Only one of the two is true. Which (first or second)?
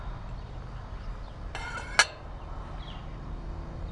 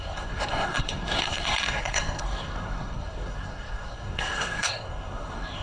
first